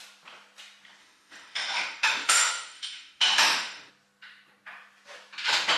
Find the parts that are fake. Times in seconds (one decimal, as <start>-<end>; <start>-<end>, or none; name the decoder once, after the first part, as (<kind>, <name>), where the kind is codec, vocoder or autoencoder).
1.0-3.9 (autoencoder, DAC-VAE)